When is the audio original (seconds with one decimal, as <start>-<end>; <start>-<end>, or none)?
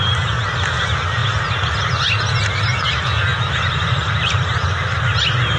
0.0-3.3; 5.0-5.6